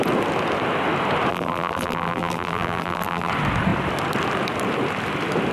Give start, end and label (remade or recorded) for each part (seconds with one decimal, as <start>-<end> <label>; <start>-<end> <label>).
0.0-1.3 recorded; 1.3-3.3 remade; 3.3-5.5 recorded